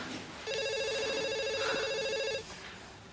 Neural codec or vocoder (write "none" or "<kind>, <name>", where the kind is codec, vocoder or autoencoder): none